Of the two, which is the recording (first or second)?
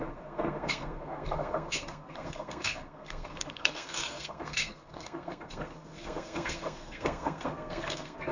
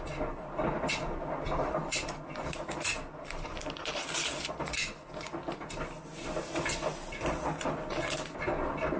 second